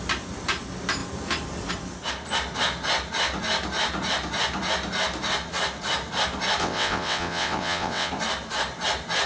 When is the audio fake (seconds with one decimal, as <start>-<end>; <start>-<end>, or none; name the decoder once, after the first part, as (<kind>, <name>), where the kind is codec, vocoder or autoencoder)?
6.6-8.1 (vocoder, WaveNeXt)